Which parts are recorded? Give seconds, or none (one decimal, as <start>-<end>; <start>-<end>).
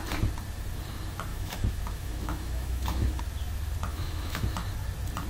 0.0-1.3; 3.2-3.9; 4.4-5.3